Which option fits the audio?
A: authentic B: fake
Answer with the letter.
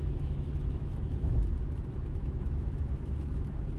B